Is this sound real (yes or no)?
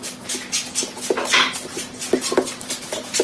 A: yes